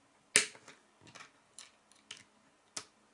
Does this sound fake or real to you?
real